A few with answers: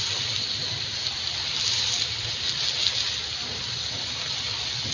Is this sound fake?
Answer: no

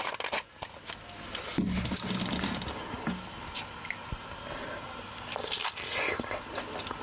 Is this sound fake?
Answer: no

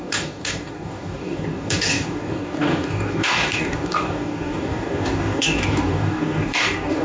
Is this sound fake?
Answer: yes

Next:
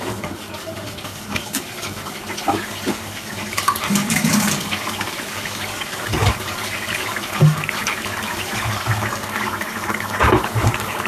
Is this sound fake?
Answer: yes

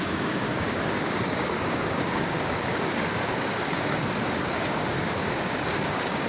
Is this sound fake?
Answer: yes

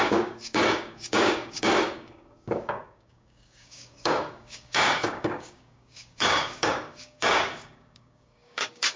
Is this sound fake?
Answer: yes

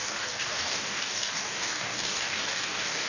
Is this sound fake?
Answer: yes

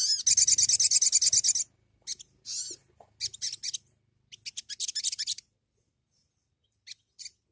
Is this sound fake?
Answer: no